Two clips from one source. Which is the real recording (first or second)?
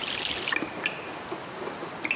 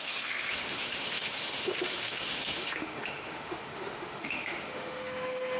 first